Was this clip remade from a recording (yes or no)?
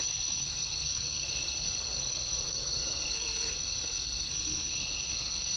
yes